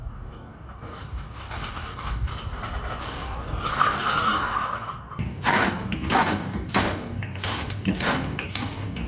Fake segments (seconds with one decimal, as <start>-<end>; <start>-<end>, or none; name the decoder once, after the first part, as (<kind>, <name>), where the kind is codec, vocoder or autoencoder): 0.0-2.3 (codec, DAC); 3.0-9.1